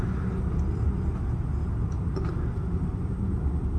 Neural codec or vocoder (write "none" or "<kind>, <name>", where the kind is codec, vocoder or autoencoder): none